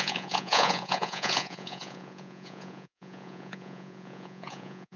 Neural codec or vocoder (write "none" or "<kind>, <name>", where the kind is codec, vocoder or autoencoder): vocoder, Vocos